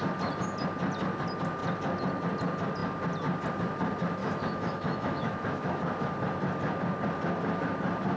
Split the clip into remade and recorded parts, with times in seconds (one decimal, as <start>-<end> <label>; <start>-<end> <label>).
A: 0.0-4.2 recorded; 4.2-5.8 remade; 5.8-8.2 recorded